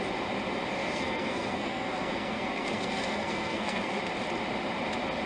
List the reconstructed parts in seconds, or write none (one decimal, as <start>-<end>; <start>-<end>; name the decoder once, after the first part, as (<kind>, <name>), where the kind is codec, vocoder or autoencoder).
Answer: 0.8-4.0 (codec, SNAC)